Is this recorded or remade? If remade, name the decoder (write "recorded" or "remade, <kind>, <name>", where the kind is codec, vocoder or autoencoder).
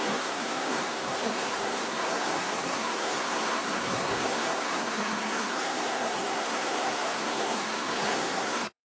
remade, codec, SNAC